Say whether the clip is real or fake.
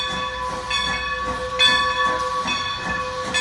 real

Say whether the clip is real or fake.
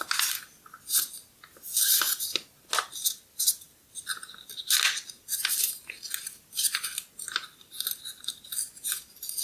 real